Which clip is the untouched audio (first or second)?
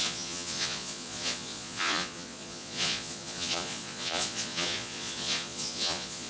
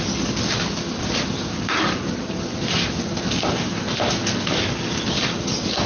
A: second